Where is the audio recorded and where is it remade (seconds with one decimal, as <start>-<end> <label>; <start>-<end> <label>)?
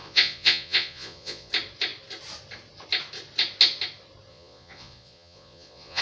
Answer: 0.0-1.5 remade; 1.5-4.3 recorded; 4.3-6.0 remade